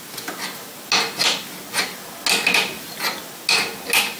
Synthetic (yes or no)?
no